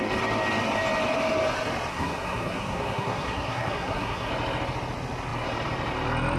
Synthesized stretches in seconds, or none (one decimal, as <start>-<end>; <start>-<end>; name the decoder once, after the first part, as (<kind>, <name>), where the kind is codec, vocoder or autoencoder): 1.9-4.3 (codec, SNAC)